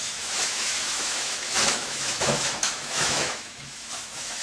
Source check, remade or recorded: remade